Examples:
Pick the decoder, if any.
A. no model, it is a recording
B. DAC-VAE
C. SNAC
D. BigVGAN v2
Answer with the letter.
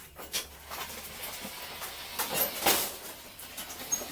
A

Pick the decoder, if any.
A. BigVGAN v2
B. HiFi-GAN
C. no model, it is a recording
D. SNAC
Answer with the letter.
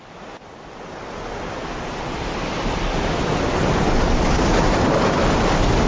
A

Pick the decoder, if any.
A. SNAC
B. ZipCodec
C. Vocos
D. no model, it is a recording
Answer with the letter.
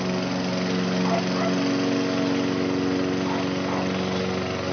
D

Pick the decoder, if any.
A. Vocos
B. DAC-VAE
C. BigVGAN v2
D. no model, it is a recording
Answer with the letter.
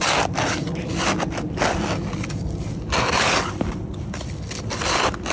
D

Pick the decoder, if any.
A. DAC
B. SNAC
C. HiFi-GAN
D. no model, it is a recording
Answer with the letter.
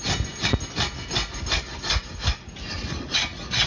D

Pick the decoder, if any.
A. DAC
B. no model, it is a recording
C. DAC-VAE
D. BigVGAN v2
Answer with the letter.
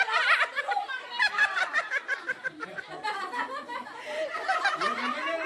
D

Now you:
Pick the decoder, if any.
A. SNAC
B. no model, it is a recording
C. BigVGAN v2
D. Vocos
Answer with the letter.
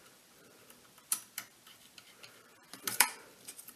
C